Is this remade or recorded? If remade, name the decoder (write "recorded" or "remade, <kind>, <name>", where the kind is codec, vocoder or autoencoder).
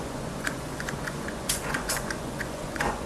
remade, vocoder, Vocos